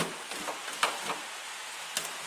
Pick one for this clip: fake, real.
real